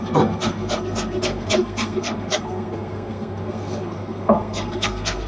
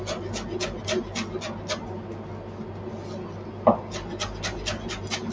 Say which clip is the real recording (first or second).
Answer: second